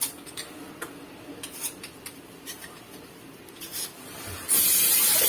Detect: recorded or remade recorded